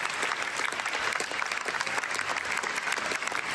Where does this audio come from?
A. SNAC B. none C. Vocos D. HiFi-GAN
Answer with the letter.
B